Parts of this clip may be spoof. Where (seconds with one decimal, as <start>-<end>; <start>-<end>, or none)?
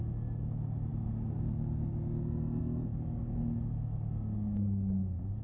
none